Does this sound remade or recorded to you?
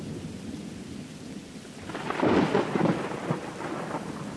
recorded